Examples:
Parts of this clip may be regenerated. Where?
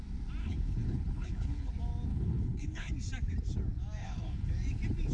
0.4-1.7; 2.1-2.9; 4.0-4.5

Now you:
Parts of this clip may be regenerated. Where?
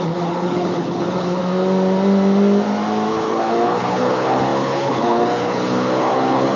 0.0-1.4; 3.1-6.6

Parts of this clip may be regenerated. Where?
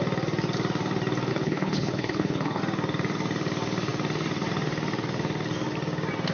1.3-2.6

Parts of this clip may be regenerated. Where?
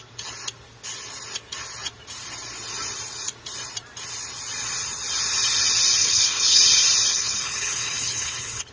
6.0-6.6; 7.1-8.7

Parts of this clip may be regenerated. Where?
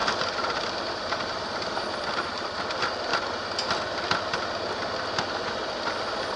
none